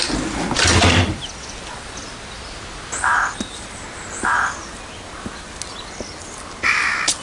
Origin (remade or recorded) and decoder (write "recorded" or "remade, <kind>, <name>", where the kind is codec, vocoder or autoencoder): recorded